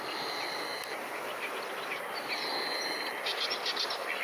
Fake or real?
fake